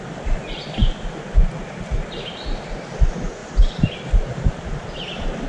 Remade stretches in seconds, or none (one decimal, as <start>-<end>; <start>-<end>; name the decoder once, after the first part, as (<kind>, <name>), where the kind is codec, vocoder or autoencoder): none